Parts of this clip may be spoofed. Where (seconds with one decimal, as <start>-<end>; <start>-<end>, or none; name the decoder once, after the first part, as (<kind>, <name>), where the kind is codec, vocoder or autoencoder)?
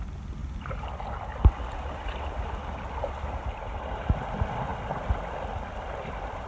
none